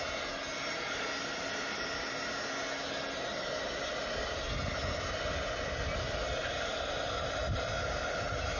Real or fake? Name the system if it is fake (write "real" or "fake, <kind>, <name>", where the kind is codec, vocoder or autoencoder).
real